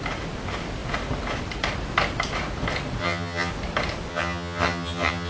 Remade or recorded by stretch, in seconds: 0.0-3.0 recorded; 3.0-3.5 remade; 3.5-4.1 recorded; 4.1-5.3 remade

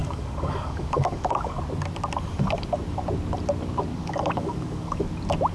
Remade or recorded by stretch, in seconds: 0.0-1.6 remade; 1.6-3.9 recorded; 3.9-5.1 remade; 5.1-5.5 recorded

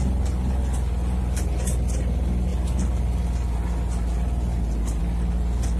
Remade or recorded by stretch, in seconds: 0.0-5.8 recorded

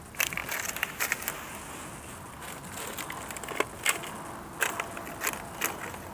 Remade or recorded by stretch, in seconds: 0.0-6.1 recorded